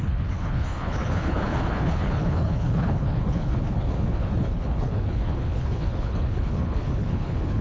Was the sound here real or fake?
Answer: fake